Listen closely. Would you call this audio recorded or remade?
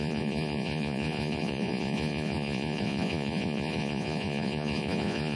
remade